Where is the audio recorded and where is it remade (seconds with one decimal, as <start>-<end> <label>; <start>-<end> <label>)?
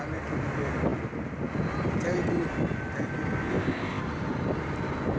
0.0-3.5 recorded; 3.5-4.0 remade; 4.0-5.2 recorded